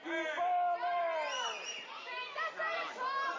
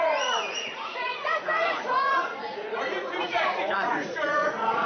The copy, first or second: second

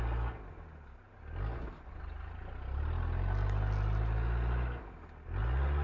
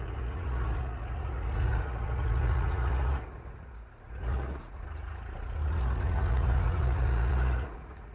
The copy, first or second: second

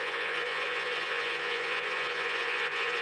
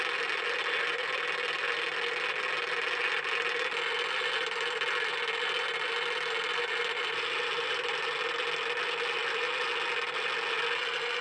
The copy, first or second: first